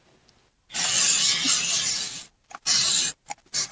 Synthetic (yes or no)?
no